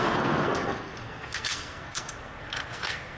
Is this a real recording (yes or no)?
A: no